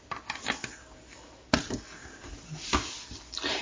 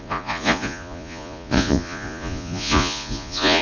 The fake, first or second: second